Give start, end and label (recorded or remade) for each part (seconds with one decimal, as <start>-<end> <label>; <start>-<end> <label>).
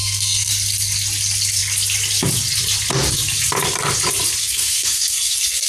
0.0-0.5 remade; 0.5-4.4 recorded; 4.4-5.7 remade